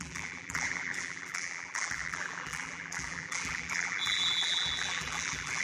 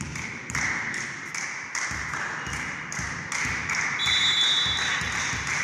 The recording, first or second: second